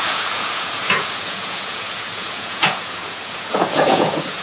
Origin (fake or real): fake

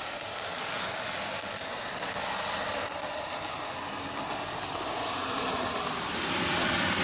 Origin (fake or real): real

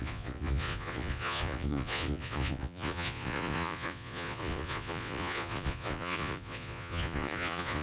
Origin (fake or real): fake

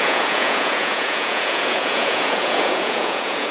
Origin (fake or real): fake